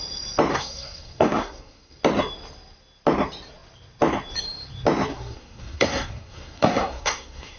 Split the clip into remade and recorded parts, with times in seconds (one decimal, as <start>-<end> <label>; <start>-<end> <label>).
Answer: 0.0-0.5 recorded; 0.5-2.0 remade; 2.0-5.1 recorded; 5.1-7.6 remade